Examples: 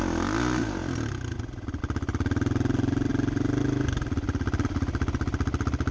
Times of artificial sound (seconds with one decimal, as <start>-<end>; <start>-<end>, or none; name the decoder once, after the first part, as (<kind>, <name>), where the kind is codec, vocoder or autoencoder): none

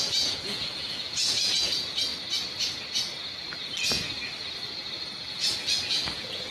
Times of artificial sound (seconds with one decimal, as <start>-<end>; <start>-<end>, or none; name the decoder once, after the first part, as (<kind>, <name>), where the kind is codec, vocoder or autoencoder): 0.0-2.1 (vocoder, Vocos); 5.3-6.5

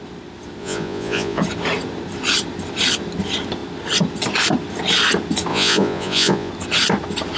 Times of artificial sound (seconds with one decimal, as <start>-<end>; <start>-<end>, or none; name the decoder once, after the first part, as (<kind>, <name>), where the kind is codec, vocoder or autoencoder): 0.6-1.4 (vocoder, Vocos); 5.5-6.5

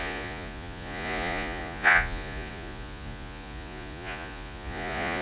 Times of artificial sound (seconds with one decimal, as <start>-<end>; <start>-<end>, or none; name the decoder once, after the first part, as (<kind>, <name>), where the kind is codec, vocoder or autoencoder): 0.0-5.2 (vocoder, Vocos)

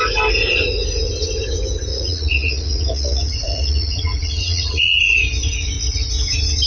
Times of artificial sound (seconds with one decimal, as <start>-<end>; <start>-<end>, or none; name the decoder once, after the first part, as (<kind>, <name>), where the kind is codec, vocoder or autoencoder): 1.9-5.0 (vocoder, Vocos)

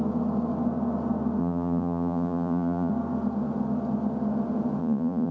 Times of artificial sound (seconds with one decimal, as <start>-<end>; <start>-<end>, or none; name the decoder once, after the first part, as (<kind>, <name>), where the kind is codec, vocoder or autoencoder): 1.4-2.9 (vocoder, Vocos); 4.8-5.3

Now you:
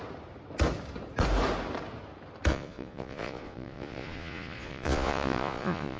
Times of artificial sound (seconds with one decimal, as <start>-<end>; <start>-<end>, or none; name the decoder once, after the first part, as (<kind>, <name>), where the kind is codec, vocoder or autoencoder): 2.5-6.0 (vocoder, Vocos)